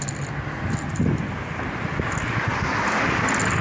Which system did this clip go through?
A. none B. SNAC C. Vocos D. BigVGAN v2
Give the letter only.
A